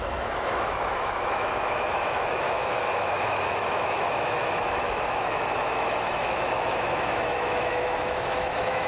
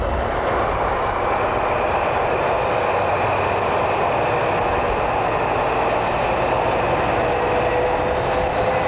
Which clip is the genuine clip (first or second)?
second